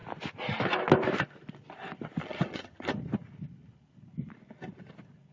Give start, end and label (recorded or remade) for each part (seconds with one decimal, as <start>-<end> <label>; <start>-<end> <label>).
0.0-2.2 recorded; 2.2-2.9 remade; 2.9-5.3 recorded